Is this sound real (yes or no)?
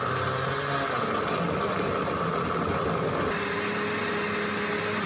yes